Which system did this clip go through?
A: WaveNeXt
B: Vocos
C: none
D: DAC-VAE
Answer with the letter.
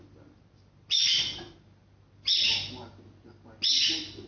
C